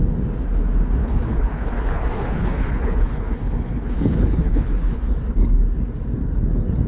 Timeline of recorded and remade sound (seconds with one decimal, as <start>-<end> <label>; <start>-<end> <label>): 0.0-1.0 recorded; 1.0-5.1 remade; 5.1-6.9 recorded

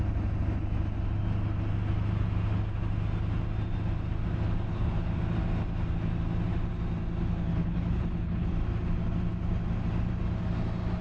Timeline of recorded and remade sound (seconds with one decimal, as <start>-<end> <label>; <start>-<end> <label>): 0.0-4.7 recorded; 4.7-5.2 remade; 5.2-7.5 recorded; 7.5-8.5 remade; 8.5-11.0 recorded

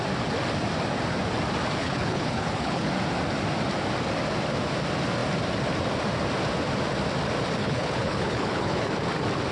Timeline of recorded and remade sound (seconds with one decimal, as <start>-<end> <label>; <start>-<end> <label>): 0.0-1.8 recorded; 1.8-2.9 remade; 2.9-7.6 recorded; 7.6-8.9 remade; 8.9-9.5 recorded

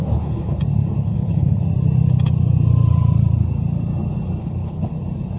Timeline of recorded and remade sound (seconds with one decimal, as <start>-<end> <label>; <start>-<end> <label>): 0.0-0.6 remade; 0.6-1.0 recorded; 1.0-1.6 remade; 1.6-4.4 recorded; 4.4-4.9 remade; 4.9-5.4 recorded

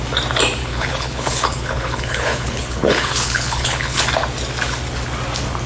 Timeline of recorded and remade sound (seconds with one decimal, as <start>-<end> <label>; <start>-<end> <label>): 0.0-0.6 recorded; 0.6-4.0 remade; 4.0-5.7 recorded